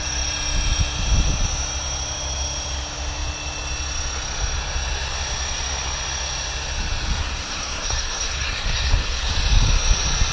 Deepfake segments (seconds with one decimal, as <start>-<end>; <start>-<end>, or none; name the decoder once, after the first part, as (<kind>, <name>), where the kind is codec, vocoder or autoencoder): 7.2-9.3 (codec, SNAC)